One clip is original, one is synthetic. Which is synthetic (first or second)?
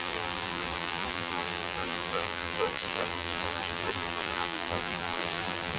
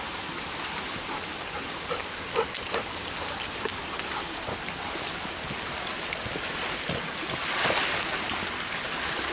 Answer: first